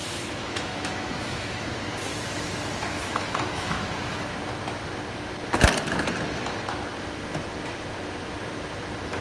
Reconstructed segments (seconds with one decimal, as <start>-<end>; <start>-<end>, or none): 0.0-4.3